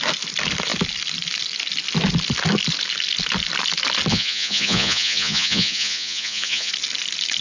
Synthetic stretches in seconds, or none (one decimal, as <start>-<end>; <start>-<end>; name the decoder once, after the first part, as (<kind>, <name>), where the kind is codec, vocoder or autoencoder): 4.1-6.7 (vocoder, Vocos)